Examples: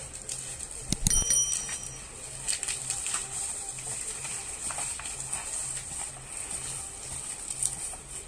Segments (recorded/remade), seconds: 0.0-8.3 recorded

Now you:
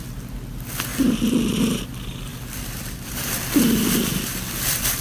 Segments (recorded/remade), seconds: 0.0-2.3 recorded; 2.3-3.5 remade; 3.5-5.0 recorded

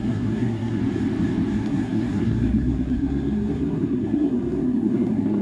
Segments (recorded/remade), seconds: 0.0-0.8 remade; 0.8-1.5 recorded; 1.5-5.4 remade

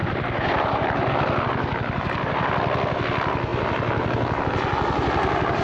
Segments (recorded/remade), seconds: 0.0-1.1 remade; 1.1-5.6 recorded

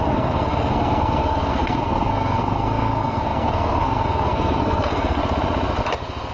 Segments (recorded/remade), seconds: 0.0-5.2 remade; 5.2-6.3 recorded

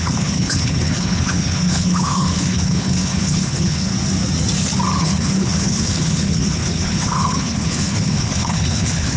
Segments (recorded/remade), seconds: 0.0-3.9 remade; 3.9-5.0 recorded; 5.0-9.2 remade

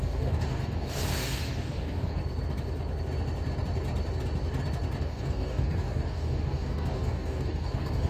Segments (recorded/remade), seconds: 0.0-2.2 remade; 2.2-5.0 recorded; 5.0-8.1 remade

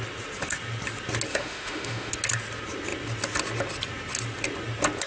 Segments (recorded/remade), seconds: 0.0-1.3 recorded; 1.3-2.1 remade; 2.1-5.1 recorded